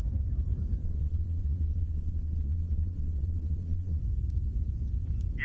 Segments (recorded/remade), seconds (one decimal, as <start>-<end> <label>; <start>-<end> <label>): 0.0-0.8 recorded; 0.8-4.0 remade; 4.0-5.4 recorded